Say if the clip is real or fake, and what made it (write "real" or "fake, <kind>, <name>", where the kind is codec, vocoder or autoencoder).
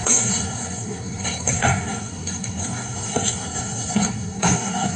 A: fake, codec, SNAC